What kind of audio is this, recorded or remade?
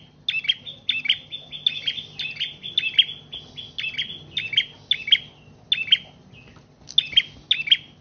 recorded